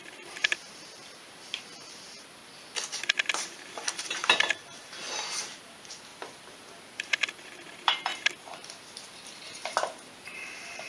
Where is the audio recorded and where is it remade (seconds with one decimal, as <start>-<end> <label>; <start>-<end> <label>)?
0.0-2.4 remade; 2.4-3.9 recorded; 3.9-6.1 remade; 6.1-6.9 recorded; 6.9-10.9 remade